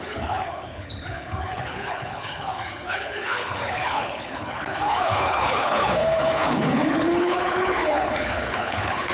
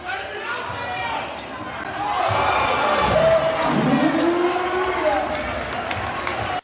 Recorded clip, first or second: second